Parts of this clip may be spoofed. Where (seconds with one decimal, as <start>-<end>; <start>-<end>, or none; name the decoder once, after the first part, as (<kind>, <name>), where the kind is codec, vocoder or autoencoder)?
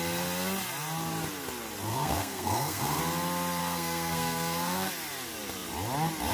1.9-3.0 (codec, SNAC); 3.6-4.9